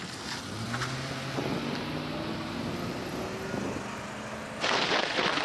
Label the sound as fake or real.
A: real